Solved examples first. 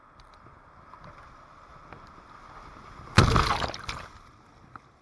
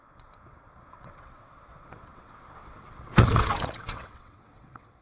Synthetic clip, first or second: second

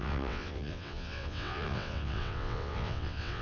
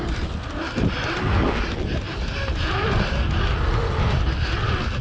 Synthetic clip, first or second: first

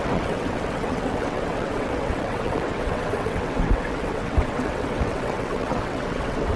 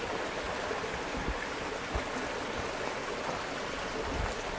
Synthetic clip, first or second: first